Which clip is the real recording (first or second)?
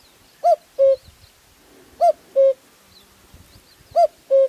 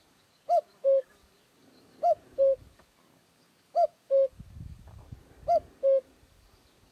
first